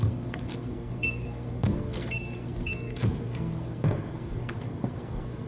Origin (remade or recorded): remade